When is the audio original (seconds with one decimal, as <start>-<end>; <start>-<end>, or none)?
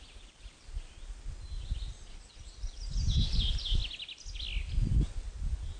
0.0-5.8